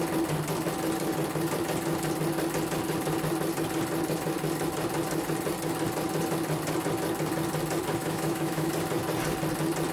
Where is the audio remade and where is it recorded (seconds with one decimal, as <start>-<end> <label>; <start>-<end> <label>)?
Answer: 0.0-8.0 recorded; 8.0-8.7 remade; 8.7-9.9 recorded